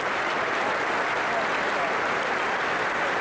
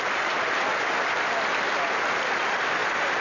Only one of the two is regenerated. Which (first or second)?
second